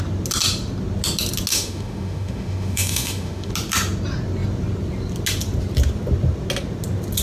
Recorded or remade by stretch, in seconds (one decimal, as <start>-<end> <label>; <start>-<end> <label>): 0.0-1.5 recorded; 1.5-3.5 remade; 3.5-7.2 recorded